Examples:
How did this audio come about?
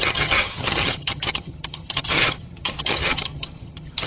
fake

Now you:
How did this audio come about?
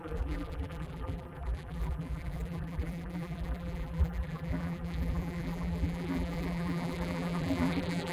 fake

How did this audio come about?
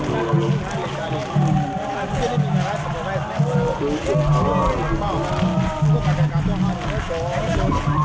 real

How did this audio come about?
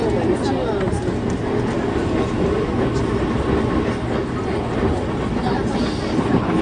real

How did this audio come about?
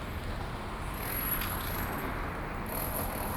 real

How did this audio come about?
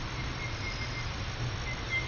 real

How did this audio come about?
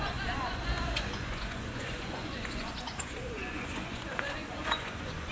fake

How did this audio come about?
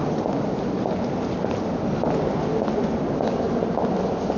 real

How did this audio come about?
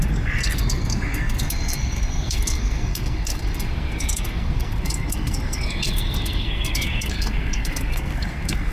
fake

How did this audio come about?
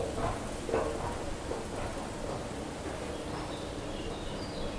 real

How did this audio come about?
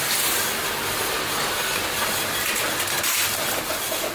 real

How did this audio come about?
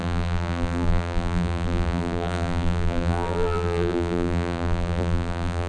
fake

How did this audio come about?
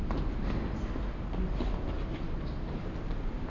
real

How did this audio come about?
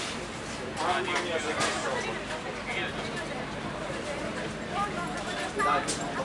real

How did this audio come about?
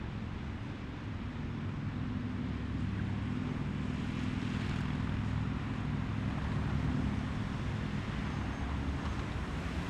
real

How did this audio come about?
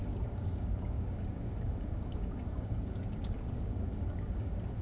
fake